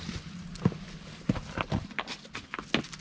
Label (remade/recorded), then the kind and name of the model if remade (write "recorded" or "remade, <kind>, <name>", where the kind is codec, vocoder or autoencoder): recorded